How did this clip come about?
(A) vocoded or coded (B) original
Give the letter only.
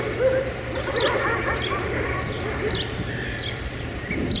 A